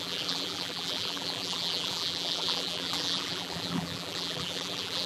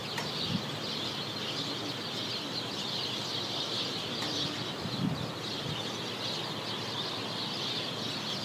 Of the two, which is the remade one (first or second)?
first